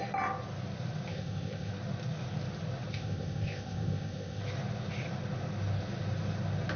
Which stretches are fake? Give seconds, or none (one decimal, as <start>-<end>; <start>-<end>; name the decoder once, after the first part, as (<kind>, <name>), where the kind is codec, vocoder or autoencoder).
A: 1.1-1.7 (codec, ZipCodec); 2.9-4.4